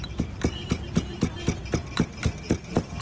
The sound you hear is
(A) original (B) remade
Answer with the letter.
A